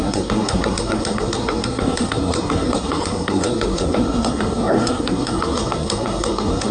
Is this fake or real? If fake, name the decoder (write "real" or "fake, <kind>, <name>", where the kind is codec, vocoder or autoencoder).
fake, codec, SNAC